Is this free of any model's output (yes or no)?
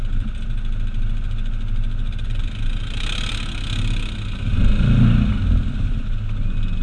yes